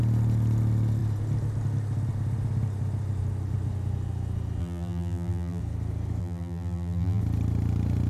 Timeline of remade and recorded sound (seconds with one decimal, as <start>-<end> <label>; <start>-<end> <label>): 0.0-4.6 recorded; 4.6-5.6 remade; 5.6-6.2 recorded; 6.2-7.2 remade; 7.2-8.1 recorded

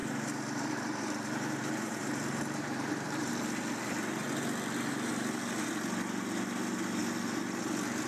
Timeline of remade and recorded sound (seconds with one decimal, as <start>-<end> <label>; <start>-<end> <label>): 0.0-3.3 remade; 3.3-8.1 recorded

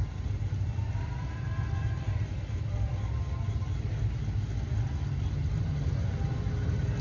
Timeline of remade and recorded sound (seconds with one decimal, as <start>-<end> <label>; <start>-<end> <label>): 0.0-2.3 remade; 2.3-7.0 recorded

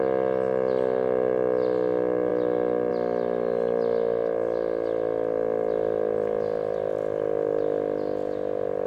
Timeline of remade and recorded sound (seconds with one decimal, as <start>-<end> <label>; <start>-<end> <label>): 0.0-8.9 recorded

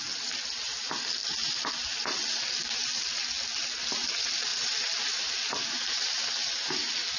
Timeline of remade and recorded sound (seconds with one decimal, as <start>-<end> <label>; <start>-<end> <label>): 0.0-1.2 recorded; 1.2-3.0 remade; 3.0-4.5 recorded; 4.5-5.3 remade; 5.3-7.2 recorded

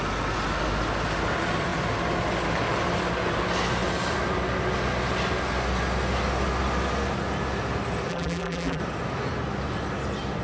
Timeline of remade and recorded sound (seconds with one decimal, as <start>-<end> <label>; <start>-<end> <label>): 0.0-8.1 recorded; 8.1-8.8 remade; 8.8-10.4 recorded